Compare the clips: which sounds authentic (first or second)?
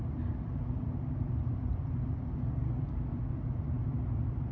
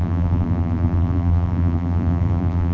first